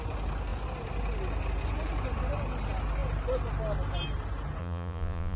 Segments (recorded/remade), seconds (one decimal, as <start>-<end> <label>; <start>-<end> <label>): 0.0-4.6 recorded; 4.6-5.4 remade